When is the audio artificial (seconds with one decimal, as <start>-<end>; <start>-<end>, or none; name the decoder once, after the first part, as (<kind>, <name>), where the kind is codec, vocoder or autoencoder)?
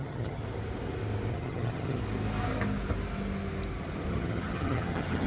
0.0-0.4 (vocoder, HiFi-GAN); 1.3-2.0; 4.1-5.3